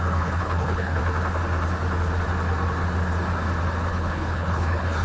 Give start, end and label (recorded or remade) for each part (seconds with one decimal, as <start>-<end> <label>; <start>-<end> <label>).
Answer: 0.0-1.0 remade; 1.0-3.9 recorded; 3.9-5.0 remade